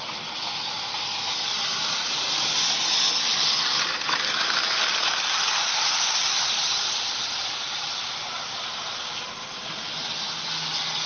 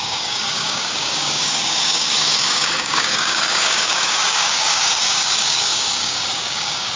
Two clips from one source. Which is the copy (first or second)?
second